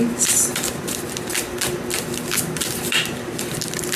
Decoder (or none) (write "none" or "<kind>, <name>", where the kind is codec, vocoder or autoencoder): none